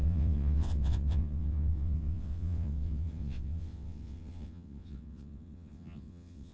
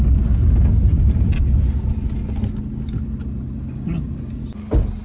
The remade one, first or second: first